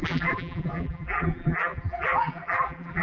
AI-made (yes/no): yes